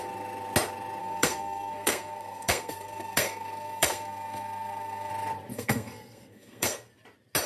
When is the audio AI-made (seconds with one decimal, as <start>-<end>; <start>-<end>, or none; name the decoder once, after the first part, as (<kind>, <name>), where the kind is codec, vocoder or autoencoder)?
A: 1.0-5.1 (codec, SNAC); 5.5-6.9